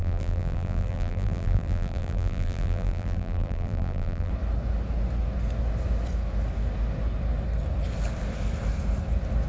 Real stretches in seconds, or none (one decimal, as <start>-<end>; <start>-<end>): 4.3-9.5